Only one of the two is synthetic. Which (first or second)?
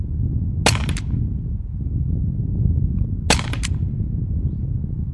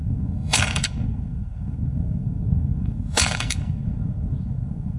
second